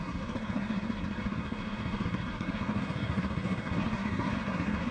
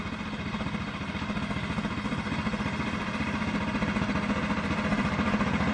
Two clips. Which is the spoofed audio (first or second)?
first